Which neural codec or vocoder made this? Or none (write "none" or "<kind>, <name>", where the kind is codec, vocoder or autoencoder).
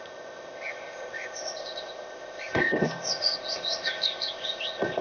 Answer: codec, ZipCodec